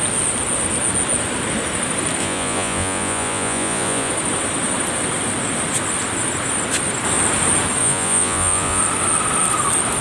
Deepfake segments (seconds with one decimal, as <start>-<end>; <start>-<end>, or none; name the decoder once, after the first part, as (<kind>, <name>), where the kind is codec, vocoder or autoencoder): 2.2-4.1 (vocoder, Vocos); 7.8-8.8